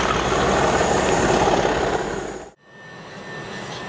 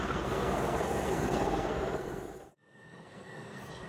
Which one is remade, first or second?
second